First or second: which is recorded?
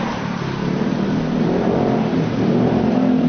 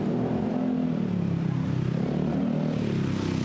second